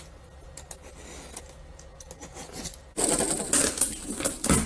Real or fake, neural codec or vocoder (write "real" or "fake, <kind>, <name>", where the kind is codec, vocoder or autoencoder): real